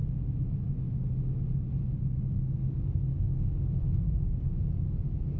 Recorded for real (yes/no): yes